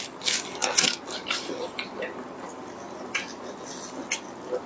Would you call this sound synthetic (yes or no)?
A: no